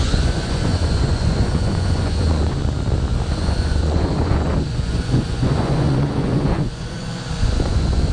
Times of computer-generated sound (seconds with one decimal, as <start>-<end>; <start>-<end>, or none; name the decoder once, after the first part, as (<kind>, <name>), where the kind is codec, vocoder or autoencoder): 0.0-2.6 (vocoder, Vocos); 3.3-8.1